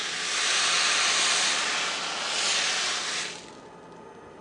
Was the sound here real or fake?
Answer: real